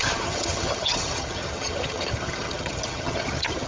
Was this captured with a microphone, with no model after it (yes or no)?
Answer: no